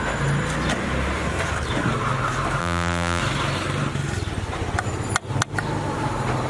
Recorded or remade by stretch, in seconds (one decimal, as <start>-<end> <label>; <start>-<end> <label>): 0.0-2.6 recorded; 2.6-3.2 remade; 3.2-6.5 recorded